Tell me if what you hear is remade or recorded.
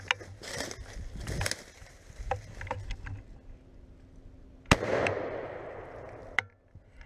recorded